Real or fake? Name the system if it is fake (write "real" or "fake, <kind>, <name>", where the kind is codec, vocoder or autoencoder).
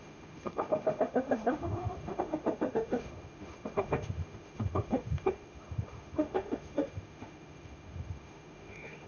fake, autoencoder, DAC-VAE